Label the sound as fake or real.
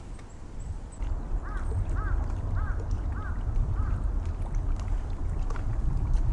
real